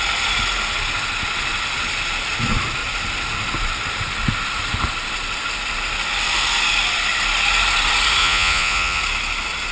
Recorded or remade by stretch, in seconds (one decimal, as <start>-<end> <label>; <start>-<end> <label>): 0.0-8.2 recorded; 8.2-9.0 remade; 9.0-9.7 recorded